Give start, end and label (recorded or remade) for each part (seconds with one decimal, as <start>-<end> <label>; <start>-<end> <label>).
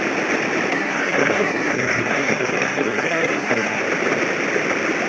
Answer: 0.0-0.7 recorded; 0.7-3.8 remade; 3.8-5.1 recorded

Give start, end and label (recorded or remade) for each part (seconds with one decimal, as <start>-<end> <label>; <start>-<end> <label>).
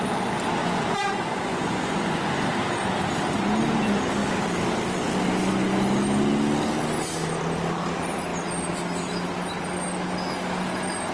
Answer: 0.0-0.6 recorded; 0.6-2.5 remade; 2.5-11.1 recorded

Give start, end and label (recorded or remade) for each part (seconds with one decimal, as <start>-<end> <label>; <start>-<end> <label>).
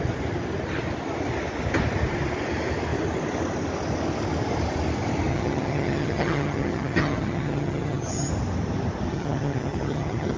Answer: 0.0-5.3 recorded; 5.3-8.3 remade; 8.3-9.1 recorded; 9.1-10.4 remade